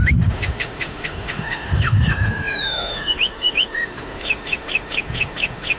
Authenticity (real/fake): fake